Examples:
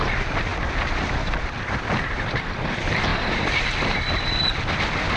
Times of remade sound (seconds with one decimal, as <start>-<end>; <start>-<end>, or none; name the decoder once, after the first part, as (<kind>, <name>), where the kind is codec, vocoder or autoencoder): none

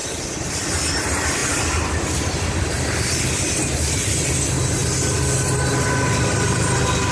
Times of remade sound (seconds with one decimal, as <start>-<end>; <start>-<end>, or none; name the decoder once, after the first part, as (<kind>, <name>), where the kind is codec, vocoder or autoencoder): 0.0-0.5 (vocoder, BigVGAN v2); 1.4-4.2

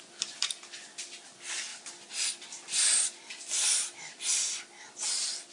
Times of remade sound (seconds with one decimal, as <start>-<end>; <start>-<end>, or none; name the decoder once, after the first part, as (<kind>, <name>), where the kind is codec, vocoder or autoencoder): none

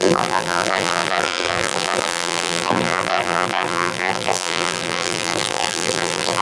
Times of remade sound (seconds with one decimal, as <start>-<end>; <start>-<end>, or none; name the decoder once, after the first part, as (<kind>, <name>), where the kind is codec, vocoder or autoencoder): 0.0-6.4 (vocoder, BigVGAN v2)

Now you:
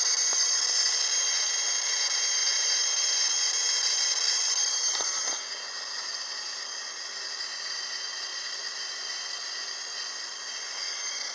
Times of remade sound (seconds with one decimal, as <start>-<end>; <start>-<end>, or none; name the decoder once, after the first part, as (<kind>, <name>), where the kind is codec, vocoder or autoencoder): none